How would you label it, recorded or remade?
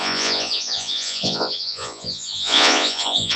remade